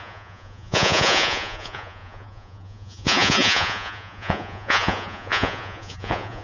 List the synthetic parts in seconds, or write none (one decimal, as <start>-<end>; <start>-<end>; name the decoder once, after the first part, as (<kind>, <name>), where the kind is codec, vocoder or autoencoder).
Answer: 0.0-6.4 (vocoder, Vocos)

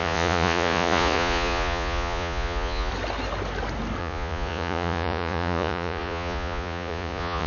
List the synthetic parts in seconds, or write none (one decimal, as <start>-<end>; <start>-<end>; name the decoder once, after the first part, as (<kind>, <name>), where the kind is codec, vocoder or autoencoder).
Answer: 0.0-2.9 (vocoder, Vocos); 4.0-7.5

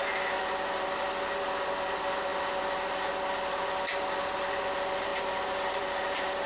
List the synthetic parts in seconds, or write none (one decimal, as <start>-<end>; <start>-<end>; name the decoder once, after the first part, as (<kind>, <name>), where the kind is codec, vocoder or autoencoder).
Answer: none